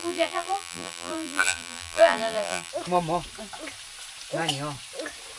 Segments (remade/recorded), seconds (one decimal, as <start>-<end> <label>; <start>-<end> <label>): 0.0-2.7 remade; 2.7-5.4 recorded